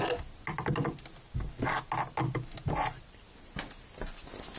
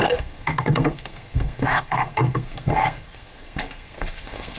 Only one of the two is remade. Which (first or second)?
second